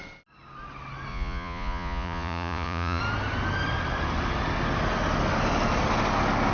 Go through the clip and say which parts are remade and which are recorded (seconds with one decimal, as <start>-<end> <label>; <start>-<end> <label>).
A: 0.0-1.1 recorded; 1.1-3.0 remade; 3.0-6.5 recorded